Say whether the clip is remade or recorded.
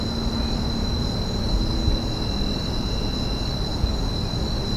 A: recorded